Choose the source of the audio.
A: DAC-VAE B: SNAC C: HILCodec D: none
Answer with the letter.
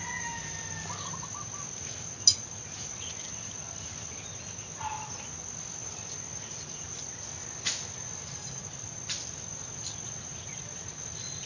D